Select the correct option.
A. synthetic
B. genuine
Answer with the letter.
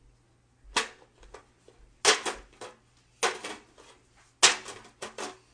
B